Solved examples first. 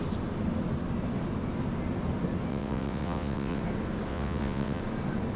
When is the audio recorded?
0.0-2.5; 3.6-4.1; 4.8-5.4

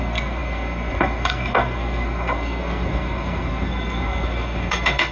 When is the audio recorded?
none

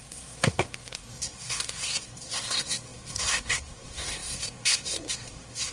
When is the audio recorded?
none

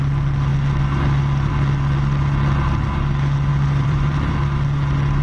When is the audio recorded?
0.0-3.5; 4.3-5.2